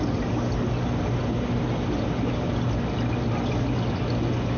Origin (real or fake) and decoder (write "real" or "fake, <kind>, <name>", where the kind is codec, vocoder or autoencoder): real